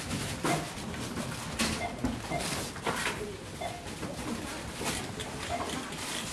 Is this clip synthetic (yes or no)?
no